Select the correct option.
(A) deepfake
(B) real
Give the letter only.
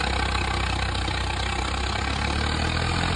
B